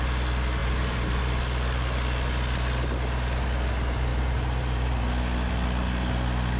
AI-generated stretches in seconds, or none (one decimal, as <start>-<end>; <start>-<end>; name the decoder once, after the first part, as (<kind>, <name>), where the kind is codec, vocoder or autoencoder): 0.6-1.2 (vocoder, BigVGAN v2); 4.1-5.0